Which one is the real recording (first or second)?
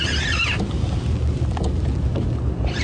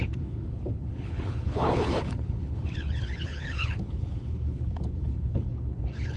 first